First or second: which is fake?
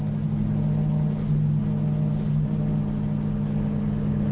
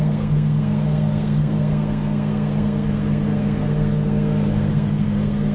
second